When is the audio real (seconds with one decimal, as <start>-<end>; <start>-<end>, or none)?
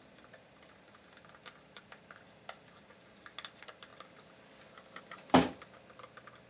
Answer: 0.0-6.5